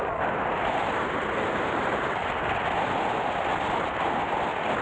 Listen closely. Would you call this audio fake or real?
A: real